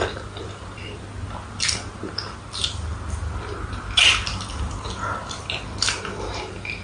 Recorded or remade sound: recorded